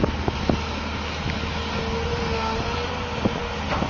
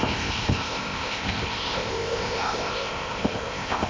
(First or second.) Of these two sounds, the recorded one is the first